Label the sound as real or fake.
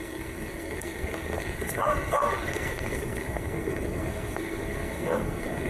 fake